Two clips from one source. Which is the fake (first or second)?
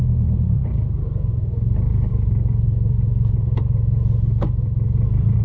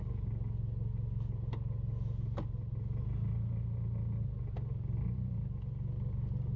first